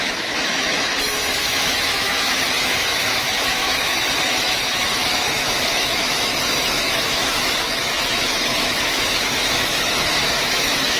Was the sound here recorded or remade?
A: remade